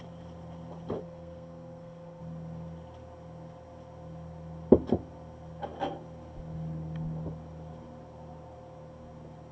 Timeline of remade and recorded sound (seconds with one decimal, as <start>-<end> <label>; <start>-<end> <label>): 0.0-1.0 recorded; 1.0-2.2 remade; 2.2-9.5 recorded